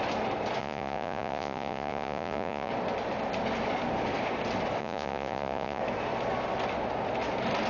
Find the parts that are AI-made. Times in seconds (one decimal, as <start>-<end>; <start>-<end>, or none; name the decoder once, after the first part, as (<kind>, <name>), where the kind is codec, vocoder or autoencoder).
0.6-2.7 (vocoder, Vocos); 4.8-5.8